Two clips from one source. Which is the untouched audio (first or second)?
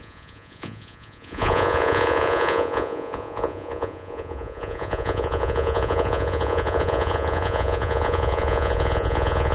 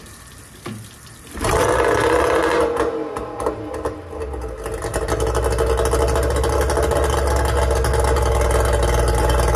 second